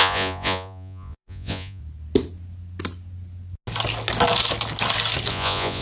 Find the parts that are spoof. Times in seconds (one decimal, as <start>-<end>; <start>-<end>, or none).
0.0-1.8; 5.3-5.8